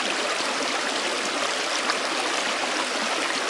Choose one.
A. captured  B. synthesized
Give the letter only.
A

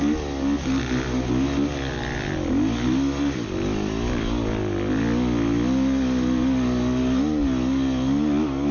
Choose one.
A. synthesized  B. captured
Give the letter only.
B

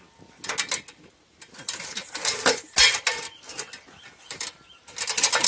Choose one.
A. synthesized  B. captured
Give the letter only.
B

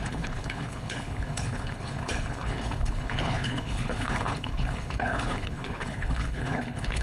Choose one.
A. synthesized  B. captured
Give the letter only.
A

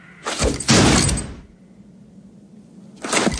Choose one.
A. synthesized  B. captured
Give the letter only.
B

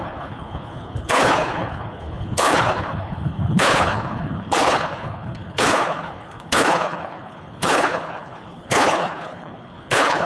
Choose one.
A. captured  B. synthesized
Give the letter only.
B